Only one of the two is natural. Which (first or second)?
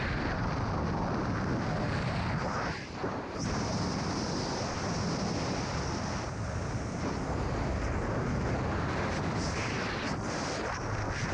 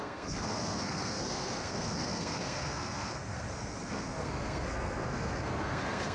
first